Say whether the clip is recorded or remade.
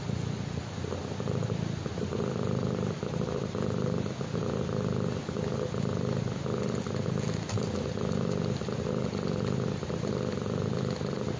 recorded